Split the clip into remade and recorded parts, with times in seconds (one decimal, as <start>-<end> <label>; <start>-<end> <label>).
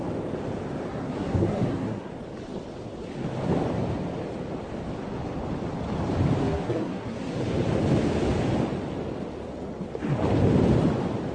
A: 0.0-0.9 recorded; 0.9-2.1 remade; 2.1-6.4 recorded; 6.4-7.4 remade; 7.4-11.3 recorded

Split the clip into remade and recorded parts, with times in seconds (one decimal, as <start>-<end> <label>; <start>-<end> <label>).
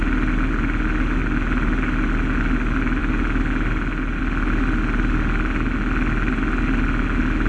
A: 0.0-7.5 recorded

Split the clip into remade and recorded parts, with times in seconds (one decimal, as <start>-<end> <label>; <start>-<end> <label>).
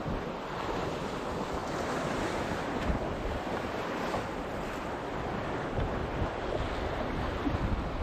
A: 0.0-1.6 remade; 1.6-2.4 recorded; 2.4-6.0 remade; 6.0-7.4 recorded; 7.4-8.0 remade